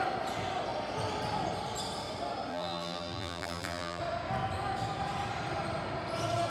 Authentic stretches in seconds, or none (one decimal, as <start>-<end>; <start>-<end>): 0.0-2.5; 4.0-6.5